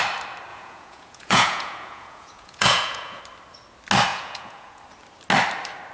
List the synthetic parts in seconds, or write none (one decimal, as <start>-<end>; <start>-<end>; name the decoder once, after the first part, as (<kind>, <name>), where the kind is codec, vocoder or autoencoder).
0.5-3.2 (vocoder, Vocos); 4.1-4.8